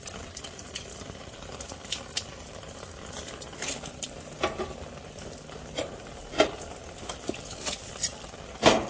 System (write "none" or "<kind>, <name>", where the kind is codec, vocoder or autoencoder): vocoder, BigVGAN v2